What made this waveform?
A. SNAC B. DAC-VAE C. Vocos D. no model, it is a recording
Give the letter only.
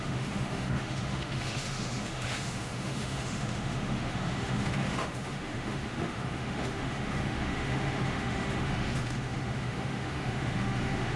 B